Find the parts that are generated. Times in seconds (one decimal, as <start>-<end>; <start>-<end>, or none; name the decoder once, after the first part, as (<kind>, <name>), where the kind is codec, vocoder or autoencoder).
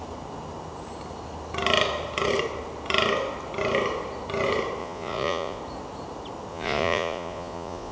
4.8-5.6 (vocoder, Vocos); 6.5-7.9